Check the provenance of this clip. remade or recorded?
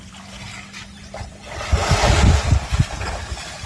recorded